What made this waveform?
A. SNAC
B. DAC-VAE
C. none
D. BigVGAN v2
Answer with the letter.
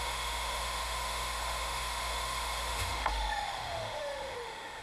B